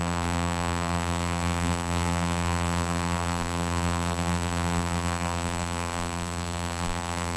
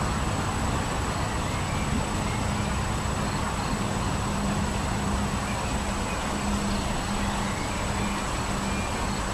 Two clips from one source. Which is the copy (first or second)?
first